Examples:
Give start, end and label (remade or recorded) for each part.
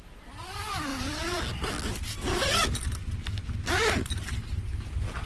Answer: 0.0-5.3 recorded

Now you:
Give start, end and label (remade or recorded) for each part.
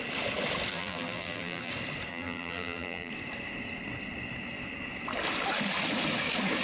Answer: 0.0-0.7 recorded; 0.7-1.7 remade; 1.7-2.1 recorded; 2.1-3.1 remade; 3.1-6.6 recorded